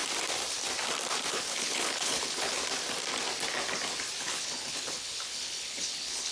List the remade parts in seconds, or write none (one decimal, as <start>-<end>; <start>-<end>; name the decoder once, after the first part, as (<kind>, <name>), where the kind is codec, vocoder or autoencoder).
1.3-2.5 (codec, HILCodec); 4.2-6.3